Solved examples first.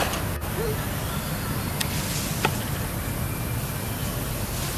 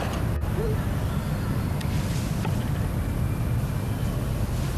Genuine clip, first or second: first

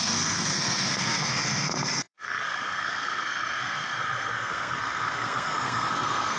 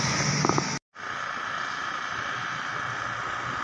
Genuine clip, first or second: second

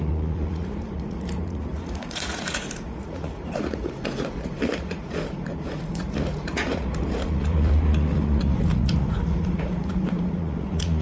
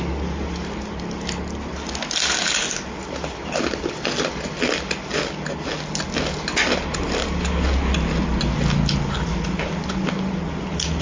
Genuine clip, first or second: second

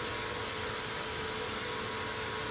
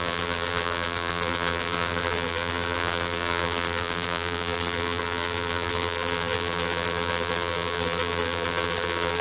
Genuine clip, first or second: first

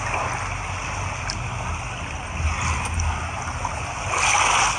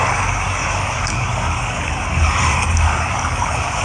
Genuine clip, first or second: first